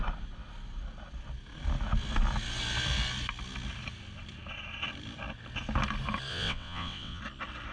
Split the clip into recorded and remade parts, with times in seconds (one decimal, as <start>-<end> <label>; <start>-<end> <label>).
0.0-6.3 recorded; 6.3-7.2 remade; 7.2-7.7 recorded